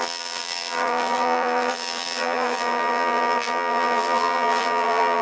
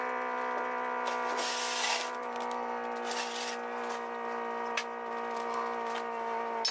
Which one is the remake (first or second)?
first